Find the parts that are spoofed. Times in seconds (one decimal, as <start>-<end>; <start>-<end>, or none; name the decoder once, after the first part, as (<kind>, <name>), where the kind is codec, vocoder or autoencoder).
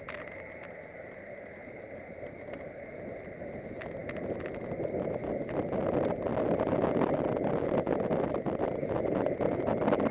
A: none